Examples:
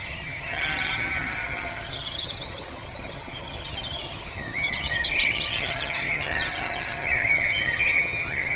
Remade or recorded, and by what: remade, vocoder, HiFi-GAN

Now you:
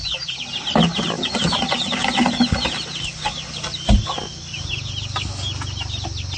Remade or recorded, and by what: recorded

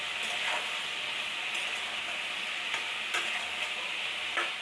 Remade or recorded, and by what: recorded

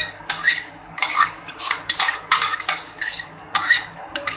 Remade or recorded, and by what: remade, codec, DAC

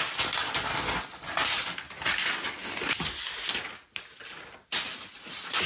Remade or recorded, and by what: recorded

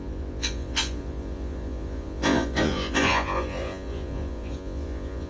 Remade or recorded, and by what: remade, vocoder, Vocos